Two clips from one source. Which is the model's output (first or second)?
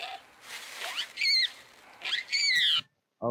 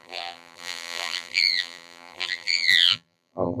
second